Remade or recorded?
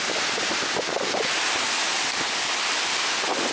recorded